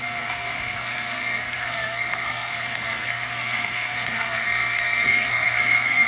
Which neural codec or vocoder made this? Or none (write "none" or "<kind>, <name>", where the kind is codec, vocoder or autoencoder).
codec, SNAC